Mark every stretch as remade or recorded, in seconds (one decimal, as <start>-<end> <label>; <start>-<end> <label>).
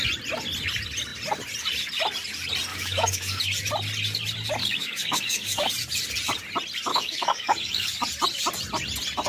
0.0-2.7 recorded; 2.7-3.4 remade; 3.4-4.6 recorded; 4.6-5.7 remade; 5.7-6.9 recorded; 6.9-8.0 remade; 8.0-9.3 recorded